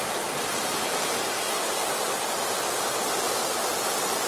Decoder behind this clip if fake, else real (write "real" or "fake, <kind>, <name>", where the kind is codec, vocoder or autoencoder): real